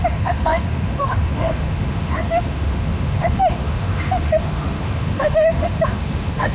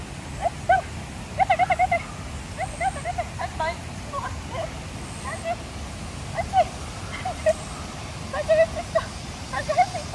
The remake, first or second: first